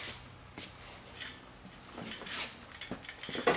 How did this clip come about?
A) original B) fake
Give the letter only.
A